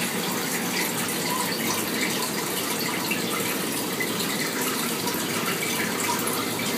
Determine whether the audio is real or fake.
real